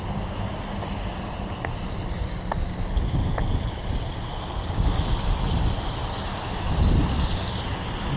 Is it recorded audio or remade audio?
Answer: recorded